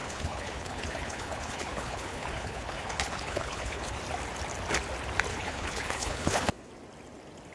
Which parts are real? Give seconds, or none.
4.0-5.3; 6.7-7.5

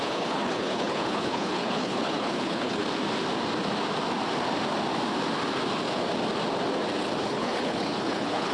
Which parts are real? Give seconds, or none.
2.8-7.2

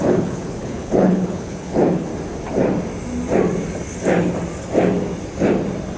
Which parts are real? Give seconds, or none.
2.1-6.0

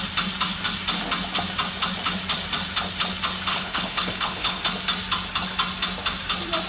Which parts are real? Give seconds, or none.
0.0-3.5; 4.6-6.7